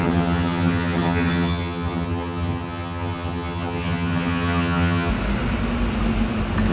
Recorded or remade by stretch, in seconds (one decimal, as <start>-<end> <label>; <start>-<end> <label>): 0.0-5.1 remade; 5.1-6.7 recorded